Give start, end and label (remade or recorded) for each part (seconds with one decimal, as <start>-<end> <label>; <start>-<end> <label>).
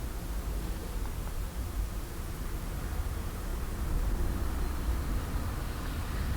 0.0-6.4 remade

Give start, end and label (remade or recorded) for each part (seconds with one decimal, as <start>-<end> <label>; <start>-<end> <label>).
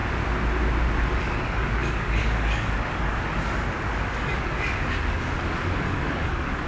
0.0-1.2 recorded; 1.2-6.7 remade